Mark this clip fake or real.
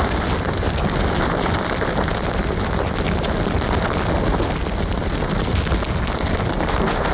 real